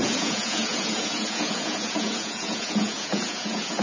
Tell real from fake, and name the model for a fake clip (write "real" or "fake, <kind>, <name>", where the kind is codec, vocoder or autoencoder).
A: fake, vocoder, Vocos